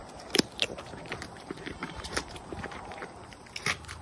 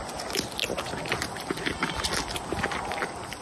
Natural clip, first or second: second